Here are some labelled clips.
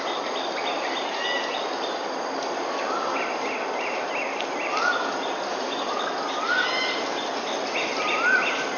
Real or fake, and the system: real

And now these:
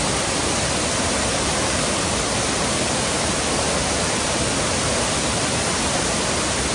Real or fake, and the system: real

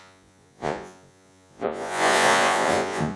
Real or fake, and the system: fake, vocoder, Vocos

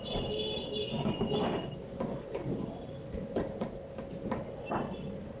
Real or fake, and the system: real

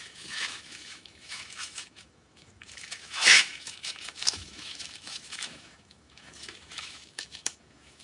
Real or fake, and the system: fake, autoencoder, DAC-VAE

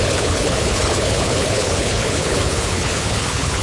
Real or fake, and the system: fake, codec, HILCodec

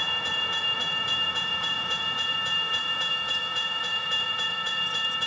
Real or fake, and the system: fake, vocoder, Vocos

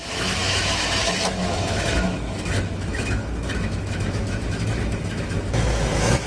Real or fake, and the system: fake, autoencoder, DAC-VAE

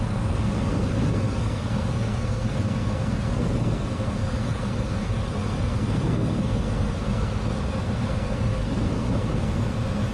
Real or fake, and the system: fake, codec, SNAC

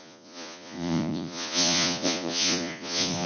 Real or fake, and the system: fake, vocoder, Vocos